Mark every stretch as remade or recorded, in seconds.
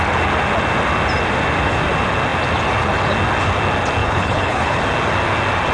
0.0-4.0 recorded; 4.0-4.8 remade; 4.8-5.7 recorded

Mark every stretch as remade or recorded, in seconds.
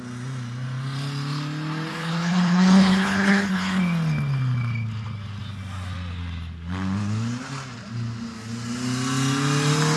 0.0-1.9 recorded; 1.9-3.8 remade; 3.8-10.0 recorded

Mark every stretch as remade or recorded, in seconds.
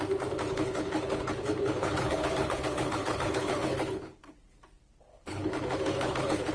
0.0-0.5 recorded; 0.5-4.4 remade; 4.4-5.1 recorded; 5.1-6.5 remade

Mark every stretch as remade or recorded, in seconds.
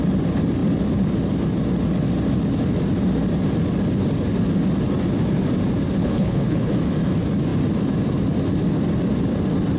0.0-6.0 recorded; 6.0-6.7 remade; 6.7-9.8 recorded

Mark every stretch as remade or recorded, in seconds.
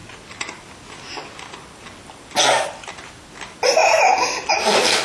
0.0-5.0 recorded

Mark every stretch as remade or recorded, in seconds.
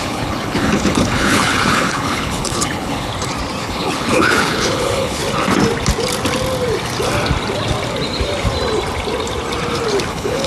0.0-3.1 remade; 3.1-3.6 recorded; 3.6-5.2 remade; 5.2-10.1 recorded; 10.1-10.5 remade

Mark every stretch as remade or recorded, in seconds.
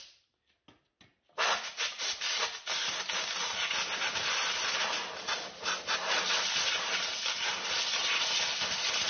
0.0-9.1 recorded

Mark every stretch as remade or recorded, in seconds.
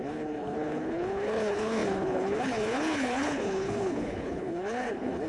0.0-5.3 remade